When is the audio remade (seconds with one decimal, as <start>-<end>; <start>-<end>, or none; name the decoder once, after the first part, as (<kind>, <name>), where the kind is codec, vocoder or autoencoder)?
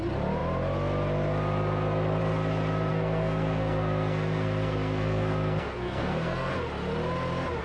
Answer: 2.9-6.5 (codec, SNAC)